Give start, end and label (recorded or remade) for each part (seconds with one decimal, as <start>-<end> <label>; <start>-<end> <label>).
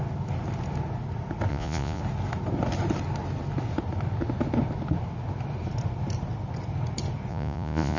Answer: 0.0-1.5 recorded; 1.5-2.0 remade; 2.0-7.3 recorded; 7.3-8.0 remade